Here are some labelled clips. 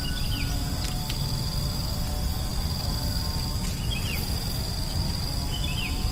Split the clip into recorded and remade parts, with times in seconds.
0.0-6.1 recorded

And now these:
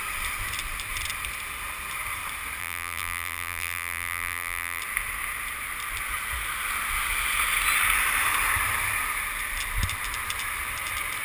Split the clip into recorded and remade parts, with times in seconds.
0.0-2.6 recorded; 2.6-4.8 remade; 4.8-11.2 recorded